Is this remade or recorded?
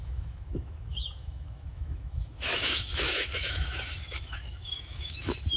remade